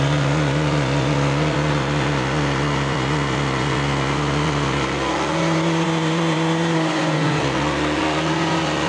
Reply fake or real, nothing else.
fake